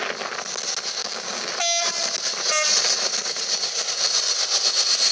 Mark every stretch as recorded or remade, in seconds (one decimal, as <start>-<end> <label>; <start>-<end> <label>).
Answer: 0.0-1.0 recorded; 1.0-1.5 remade; 1.5-5.1 recorded